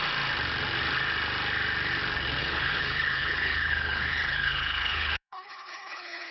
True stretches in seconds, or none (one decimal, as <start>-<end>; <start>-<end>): 0.0-2.4